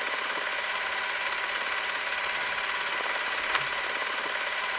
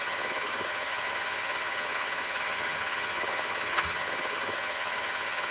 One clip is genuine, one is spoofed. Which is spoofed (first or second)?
second